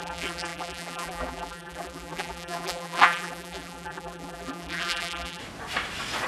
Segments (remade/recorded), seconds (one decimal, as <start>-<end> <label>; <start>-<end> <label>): 0.0-5.4 remade; 5.4-6.3 recorded